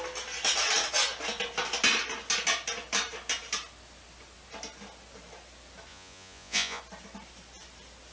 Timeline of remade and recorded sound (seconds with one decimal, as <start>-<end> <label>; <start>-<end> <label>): 0.0-5.9 recorded; 5.9-6.8 remade; 6.8-8.1 recorded